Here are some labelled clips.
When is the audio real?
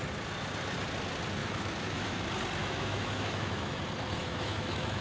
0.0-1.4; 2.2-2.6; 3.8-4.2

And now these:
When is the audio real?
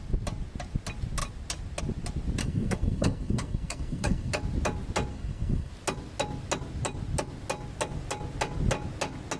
0.0-2.4; 4.3-5.1; 5.7-9.4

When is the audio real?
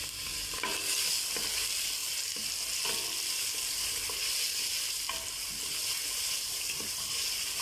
0.0-7.6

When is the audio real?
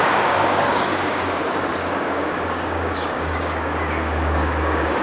1.4-1.8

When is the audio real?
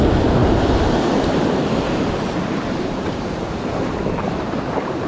0.0-0.4; 3.5-5.1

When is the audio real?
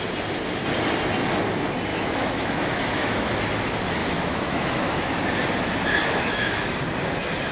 0.0-1.9; 3.3-4.0; 5.1-6.0; 6.8-7.5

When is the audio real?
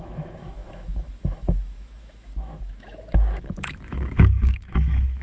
none